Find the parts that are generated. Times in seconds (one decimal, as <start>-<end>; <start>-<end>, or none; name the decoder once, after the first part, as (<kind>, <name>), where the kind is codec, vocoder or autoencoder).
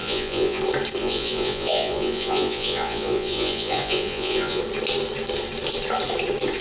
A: 0.0-0.6 (vocoder, Vocos); 1.0-4.6